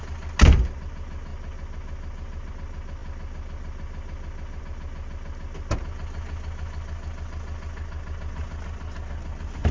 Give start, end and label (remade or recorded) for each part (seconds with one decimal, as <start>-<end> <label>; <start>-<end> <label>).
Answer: 0.0-1.3 recorded; 1.3-2.5 remade; 2.5-9.7 recorded